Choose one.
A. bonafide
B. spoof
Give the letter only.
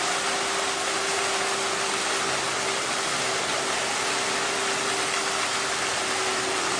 A